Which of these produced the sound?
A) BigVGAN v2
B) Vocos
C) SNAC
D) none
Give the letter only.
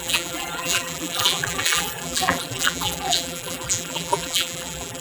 A